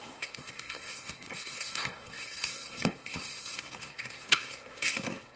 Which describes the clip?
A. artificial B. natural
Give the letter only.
A